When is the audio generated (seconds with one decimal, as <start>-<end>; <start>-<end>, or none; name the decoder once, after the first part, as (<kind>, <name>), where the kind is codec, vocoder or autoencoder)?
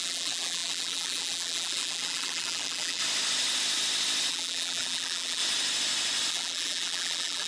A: 0.0-3.0 (vocoder, BigVGAN v2); 4.3-5.4; 6.3-7.5